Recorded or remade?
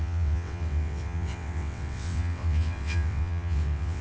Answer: remade